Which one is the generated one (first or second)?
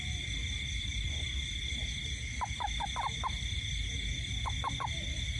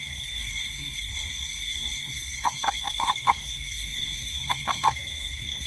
second